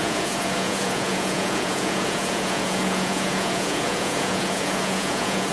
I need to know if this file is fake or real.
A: fake